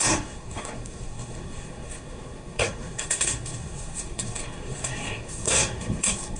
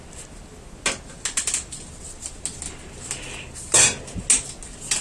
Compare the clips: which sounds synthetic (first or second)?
first